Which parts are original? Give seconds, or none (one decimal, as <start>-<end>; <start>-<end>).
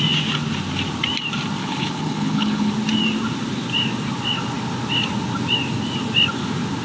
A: 0.0-1.6; 2.7-6.8